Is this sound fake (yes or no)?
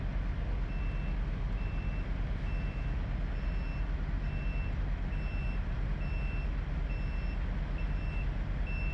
no